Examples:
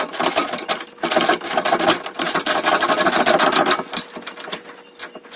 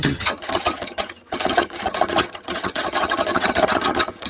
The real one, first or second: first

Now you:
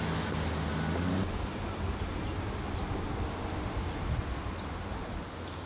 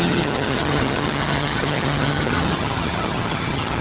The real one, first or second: first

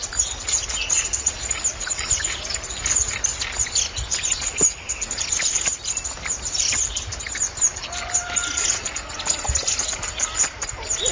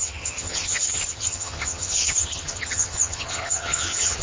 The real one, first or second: first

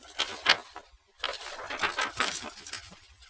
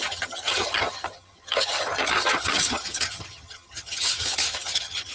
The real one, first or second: first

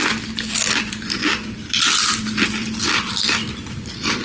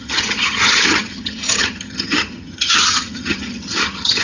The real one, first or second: first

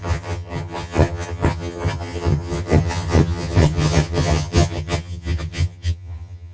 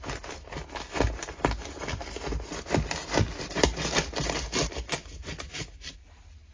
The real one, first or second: second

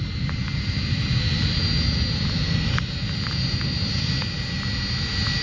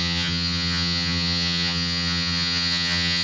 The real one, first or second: first